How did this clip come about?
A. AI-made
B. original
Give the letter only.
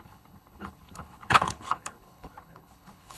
A